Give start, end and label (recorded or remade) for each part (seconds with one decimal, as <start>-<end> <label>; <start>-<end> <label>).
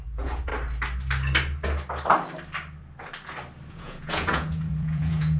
0.0-0.5 remade; 0.5-3.7 recorded; 3.7-5.4 remade